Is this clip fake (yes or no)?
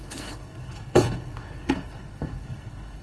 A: yes